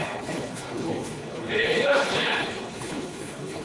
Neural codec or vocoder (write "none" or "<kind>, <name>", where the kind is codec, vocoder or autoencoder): codec, HILCodec